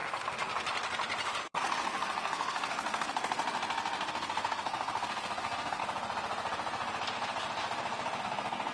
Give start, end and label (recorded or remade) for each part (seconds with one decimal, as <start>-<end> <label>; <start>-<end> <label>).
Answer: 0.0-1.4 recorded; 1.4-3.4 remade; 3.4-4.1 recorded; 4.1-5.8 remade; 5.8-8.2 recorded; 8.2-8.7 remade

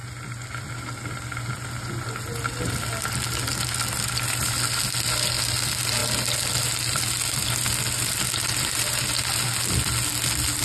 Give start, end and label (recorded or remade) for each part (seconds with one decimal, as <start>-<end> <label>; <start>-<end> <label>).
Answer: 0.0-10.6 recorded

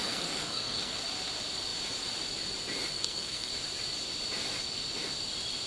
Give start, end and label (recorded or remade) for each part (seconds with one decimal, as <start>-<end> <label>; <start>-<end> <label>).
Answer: 0.0-1.0 remade; 1.0-2.9 recorded; 2.9-3.5 remade; 3.5-5.7 recorded